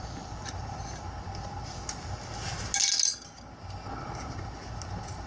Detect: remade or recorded recorded